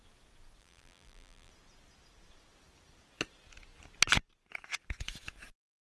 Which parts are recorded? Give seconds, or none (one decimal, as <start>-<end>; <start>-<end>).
0.0-0.6; 1.5-5.8